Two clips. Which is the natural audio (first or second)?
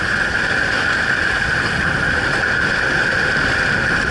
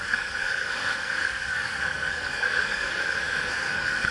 first